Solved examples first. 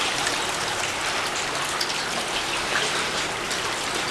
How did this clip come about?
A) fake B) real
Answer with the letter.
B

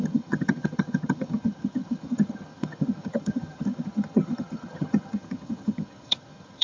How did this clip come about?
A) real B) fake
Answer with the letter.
B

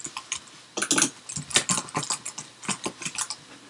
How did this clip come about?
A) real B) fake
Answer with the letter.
A